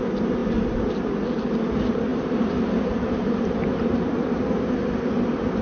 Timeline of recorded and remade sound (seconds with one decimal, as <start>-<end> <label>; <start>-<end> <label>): 0.0-2.1 recorded; 2.1-4.7 remade; 4.7-5.6 recorded